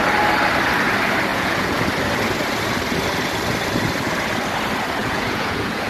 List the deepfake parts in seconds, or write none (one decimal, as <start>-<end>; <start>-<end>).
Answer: 1.3-1.8; 5.0-5.9